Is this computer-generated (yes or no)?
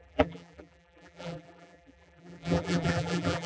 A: yes